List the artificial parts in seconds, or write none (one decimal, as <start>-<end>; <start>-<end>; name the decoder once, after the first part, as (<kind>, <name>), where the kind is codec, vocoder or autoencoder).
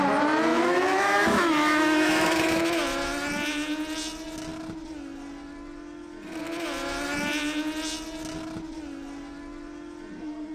0.5-2.6 (autoencoder, DAC-VAE)